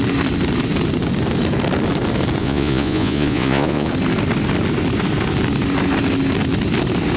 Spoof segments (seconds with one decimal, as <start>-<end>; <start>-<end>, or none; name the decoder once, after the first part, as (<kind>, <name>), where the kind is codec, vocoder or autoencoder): 2.4-3.9 (vocoder, Vocos)